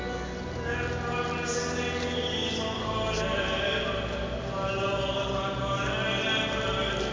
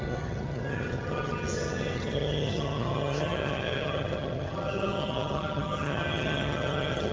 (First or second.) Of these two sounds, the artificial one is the second